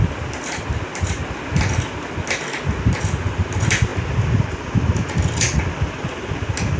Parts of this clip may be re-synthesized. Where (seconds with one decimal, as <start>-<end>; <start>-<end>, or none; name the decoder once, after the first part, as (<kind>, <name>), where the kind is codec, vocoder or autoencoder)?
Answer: none

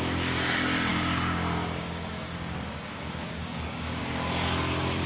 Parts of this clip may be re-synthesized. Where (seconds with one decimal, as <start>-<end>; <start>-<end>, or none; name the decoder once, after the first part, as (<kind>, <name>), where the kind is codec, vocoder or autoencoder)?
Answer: 0.9-4.0 (codec, DAC)